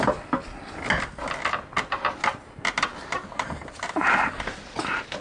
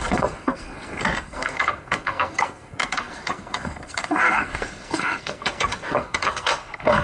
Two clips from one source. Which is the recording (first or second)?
first